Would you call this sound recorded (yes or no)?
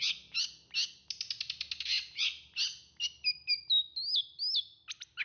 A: yes